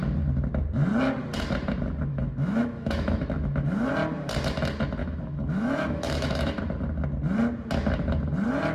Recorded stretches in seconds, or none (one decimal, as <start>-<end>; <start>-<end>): 0.0-2.1; 3.9-5.0; 6.6-8.7